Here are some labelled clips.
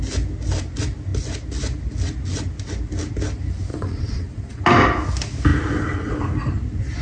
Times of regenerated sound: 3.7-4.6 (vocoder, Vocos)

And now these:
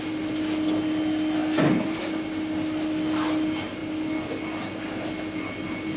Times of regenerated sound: none

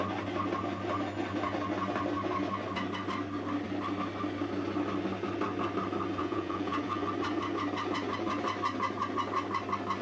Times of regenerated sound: 6.2-7.0 (vocoder, Vocos)

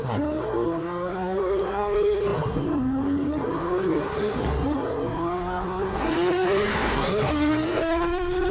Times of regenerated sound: 0.0-8.5 (codec, SNAC)